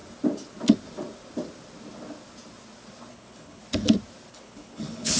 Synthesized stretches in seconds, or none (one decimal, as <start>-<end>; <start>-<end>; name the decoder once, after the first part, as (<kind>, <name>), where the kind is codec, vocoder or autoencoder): 3.1-3.6 (codec, HILCodec); 4.3-5.2